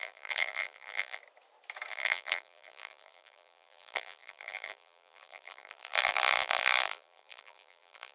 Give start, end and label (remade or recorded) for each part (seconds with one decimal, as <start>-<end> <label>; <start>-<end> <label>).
0.0-1.2 remade; 1.2-1.9 recorded; 1.9-8.1 remade